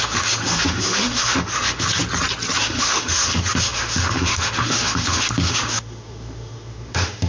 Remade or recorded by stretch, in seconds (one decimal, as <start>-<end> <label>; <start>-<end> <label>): 0.0-2.0 remade; 2.0-2.6 recorded; 2.6-7.3 remade